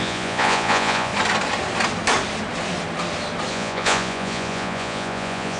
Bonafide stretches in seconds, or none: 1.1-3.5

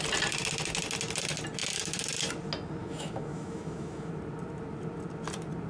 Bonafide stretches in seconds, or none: 0.0-2.8; 4.1-5.7

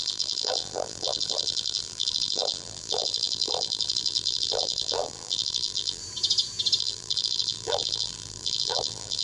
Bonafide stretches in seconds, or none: 6.0-6.8

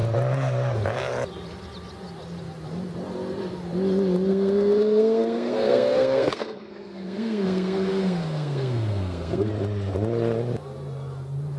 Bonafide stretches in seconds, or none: 0.0-4.3; 9.5-11.6

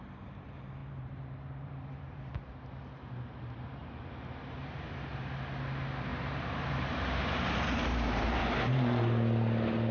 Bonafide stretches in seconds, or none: 0.0-0.8; 2.3-3.8; 5.1-6.1; 8.4-9.9

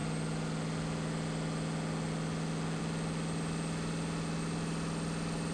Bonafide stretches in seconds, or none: 0.0-5.5

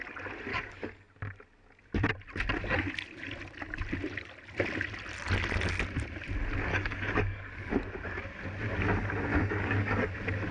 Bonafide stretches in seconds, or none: 0.0-0.5; 1.1-6.7; 7.7-9.3; 10.1-10.5